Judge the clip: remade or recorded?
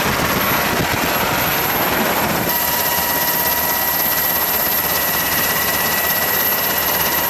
recorded